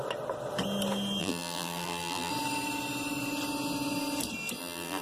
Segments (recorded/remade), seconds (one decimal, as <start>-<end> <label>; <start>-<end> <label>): 0.0-1.2 recorded; 1.2-2.3 remade; 2.3-4.6 recorded; 4.6-5.0 remade